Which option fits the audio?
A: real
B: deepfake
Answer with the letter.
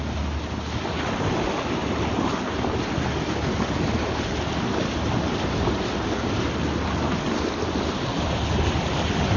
A